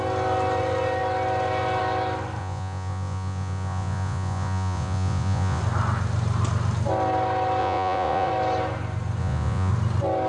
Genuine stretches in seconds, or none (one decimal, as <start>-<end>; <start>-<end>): 0.0-2.4; 5.6-7.6; 8.3-9.2; 9.7-10.3